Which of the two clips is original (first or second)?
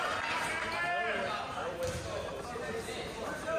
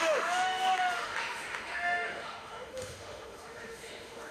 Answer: first